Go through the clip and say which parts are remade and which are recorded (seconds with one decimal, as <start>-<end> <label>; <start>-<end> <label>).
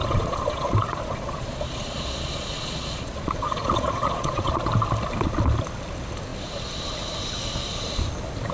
0.0-4.6 remade; 4.6-8.5 recorded